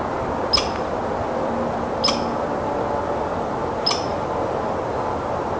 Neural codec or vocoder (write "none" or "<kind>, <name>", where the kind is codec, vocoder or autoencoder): none